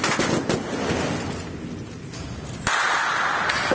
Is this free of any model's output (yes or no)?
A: yes